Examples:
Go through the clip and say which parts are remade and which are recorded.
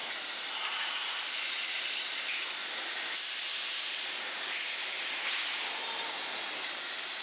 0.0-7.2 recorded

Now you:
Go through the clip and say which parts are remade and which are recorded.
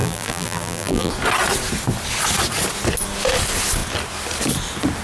0.0-1.1 remade; 1.1-5.0 recorded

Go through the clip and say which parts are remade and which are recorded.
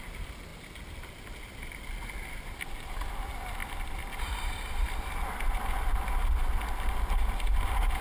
0.0-3.6 recorded; 3.6-8.0 remade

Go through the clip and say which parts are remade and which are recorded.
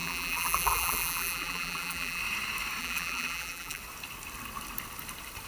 0.0-2.2 remade; 2.2-2.8 recorded; 2.8-3.8 remade; 3.8-5.5 recorded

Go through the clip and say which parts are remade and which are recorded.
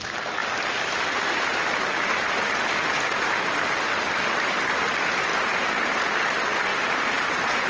0.0-5.3 recorded; 5.3-6.0 remade; 6.0-6.7 recorded; 6.7-7.7 remade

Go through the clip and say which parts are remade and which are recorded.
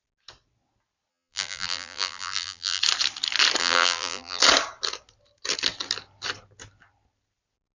0.0-1.1 recorded; 1.1-2.8 remade; 2.8-3.6 recorded; 3.6-4.4 remade; 4.4-7.8 recorded